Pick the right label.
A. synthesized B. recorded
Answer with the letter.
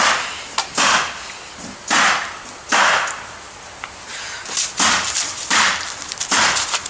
B